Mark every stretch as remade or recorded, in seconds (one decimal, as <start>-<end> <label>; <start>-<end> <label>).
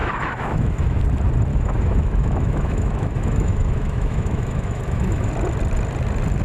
0.0-1.0 remade; 1.0-1.5 recorded; 1.5-5.3 remade; 5.3-6.4 recorded